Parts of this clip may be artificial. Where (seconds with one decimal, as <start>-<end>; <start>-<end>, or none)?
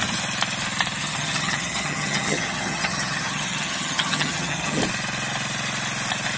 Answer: 1.0-4.8